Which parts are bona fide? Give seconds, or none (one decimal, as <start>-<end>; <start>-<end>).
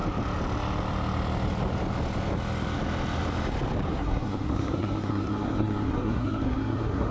0.0-3.9